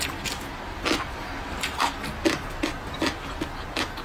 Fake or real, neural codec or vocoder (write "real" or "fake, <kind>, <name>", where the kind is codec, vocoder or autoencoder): real